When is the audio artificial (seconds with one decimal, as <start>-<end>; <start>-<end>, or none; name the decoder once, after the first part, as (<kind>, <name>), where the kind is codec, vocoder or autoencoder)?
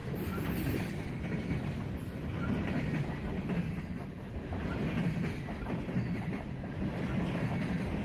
none